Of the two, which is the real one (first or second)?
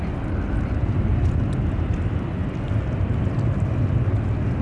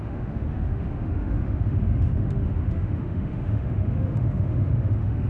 first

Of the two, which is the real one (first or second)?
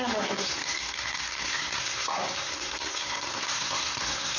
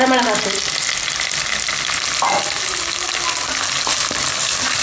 second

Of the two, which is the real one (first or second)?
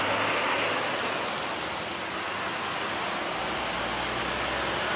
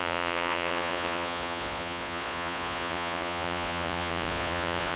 first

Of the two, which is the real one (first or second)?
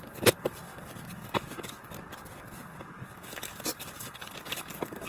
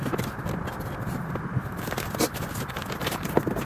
second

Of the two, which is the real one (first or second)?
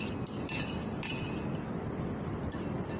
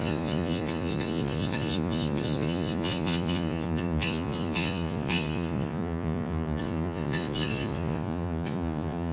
first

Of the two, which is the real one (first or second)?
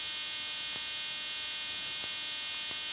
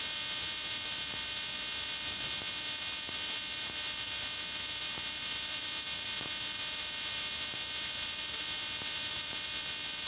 first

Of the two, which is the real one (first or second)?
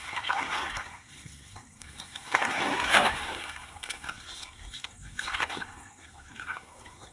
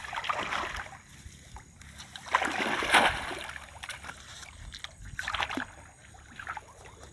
second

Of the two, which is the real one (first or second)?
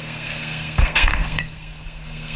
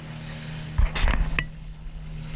second